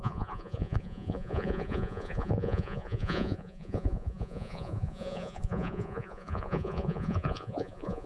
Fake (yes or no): yes